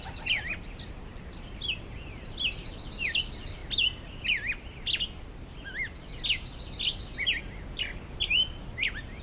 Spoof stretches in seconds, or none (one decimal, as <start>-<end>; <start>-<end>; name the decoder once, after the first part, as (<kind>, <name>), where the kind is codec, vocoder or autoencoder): none